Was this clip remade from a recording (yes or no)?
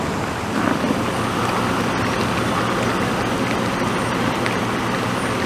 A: no